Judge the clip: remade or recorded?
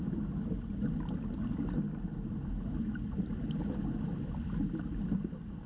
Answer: recorded